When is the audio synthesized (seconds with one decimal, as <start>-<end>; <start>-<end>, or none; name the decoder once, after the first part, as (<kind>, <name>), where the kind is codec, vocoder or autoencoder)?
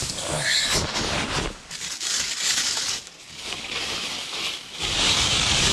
0.0-5.7 (codec, DAC)